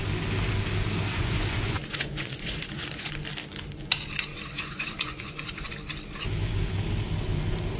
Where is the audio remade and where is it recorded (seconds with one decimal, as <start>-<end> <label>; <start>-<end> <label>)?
0.0-1.1 recorded; 1.1-3.1 remade; 3.1-4.3 recorded; 4.3-5.7 remade; 5.7-7.8 recorded